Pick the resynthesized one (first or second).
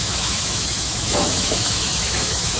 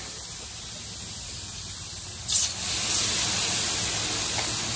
first